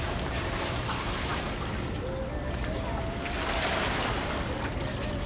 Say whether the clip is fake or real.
real